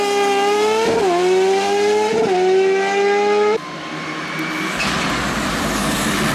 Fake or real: real